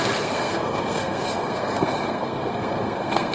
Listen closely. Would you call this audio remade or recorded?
remade